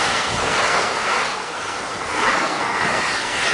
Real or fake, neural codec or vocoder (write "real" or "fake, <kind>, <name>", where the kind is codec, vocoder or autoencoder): fake, codec, SNAC